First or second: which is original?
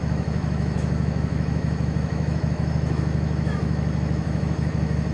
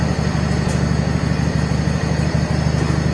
second